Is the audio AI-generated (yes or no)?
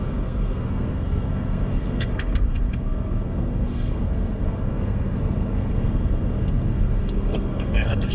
yes